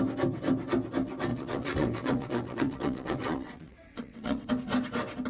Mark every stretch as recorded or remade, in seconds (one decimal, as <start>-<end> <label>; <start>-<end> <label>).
0.0-1.3 recorded; 1.3-4.5 remade; 4.5-5.3 recorded